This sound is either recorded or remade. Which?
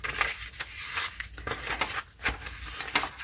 recorded